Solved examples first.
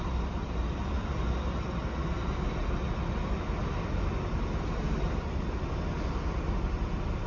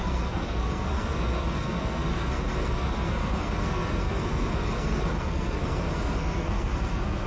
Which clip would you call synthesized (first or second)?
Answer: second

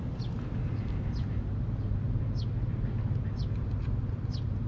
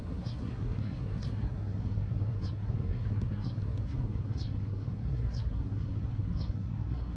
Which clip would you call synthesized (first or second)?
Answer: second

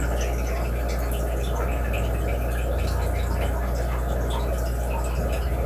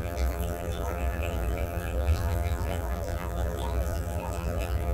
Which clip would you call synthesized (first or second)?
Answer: second